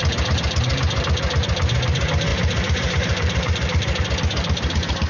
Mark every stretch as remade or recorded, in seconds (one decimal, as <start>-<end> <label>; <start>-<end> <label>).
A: 0.0-2.3 recorded; 2.3-4.0 remade; 4.0-5.1 recorded